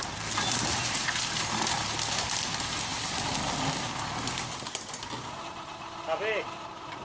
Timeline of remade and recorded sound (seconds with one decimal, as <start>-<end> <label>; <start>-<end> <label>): 0.0-7.0 recorded